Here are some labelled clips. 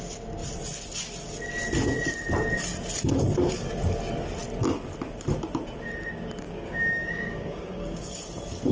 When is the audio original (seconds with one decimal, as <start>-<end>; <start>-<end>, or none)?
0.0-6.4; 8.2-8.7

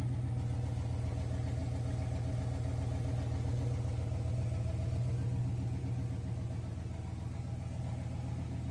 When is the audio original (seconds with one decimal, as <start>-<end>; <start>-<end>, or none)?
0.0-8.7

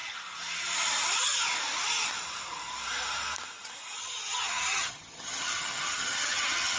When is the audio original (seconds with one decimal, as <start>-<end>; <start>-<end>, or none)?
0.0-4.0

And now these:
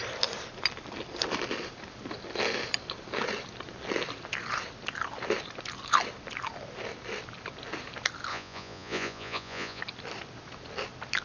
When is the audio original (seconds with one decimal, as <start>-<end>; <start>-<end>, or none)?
0.0-8.3; 9.8-11.2